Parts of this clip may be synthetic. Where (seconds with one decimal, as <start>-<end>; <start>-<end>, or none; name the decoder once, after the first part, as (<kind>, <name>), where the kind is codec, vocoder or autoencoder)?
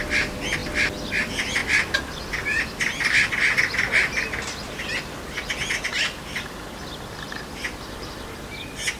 none